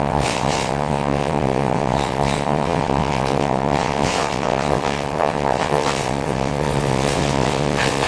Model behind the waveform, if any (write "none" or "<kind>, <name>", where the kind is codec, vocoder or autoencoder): vocoder, WaveNeXt